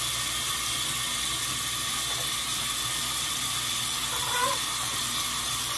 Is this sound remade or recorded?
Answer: recorded